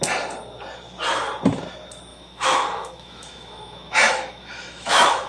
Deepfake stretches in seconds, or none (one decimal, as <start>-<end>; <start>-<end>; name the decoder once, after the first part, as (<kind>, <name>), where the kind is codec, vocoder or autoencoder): 2.1-5.3 (autoencoder, DAC-VAE)